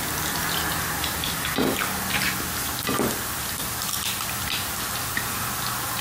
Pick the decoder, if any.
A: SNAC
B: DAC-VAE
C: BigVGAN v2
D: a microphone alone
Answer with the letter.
D